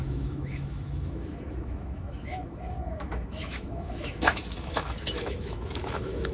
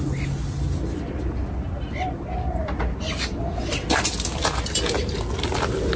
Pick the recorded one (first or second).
second